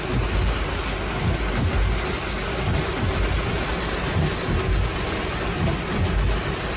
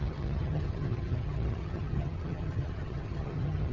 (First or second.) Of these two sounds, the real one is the first